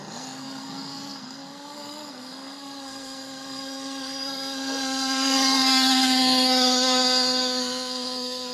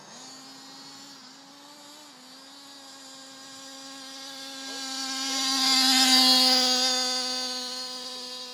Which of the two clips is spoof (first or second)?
first